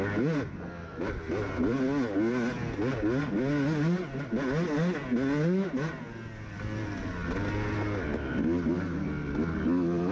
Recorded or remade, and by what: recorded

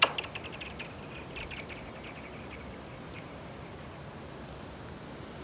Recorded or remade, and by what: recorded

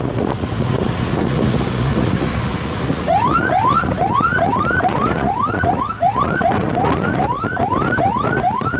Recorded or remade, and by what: remade, vocoder, Vocos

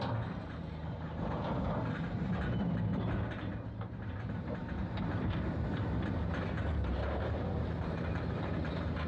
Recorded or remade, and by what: remade, vocoder, BigVGAN v2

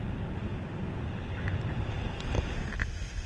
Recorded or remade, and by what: recorded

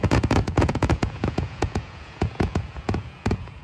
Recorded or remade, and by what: remade, vocoder, Vocos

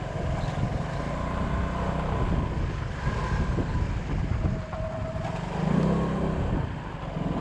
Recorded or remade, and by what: recorded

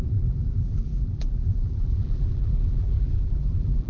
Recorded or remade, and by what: remade, vocoder, BigVGAN v2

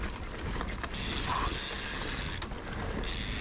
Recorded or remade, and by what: recorded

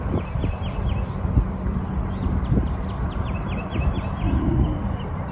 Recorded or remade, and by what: recorded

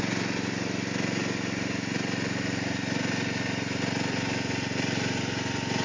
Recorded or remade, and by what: recorded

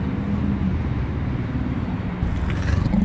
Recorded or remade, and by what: recorded